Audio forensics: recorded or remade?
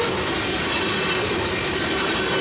recorded